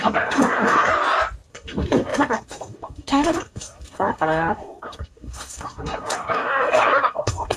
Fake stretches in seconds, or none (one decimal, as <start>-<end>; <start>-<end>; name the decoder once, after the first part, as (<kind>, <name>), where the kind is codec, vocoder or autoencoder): 0.0-0.9 (codec, SNAC); 1.5-7.6